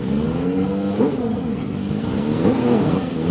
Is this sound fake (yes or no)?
yes